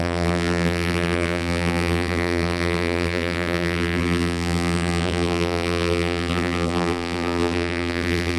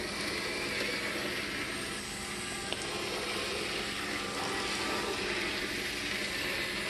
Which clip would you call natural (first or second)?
second